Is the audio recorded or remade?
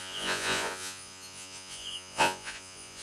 remade